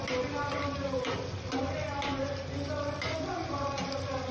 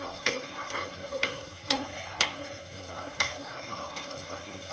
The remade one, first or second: second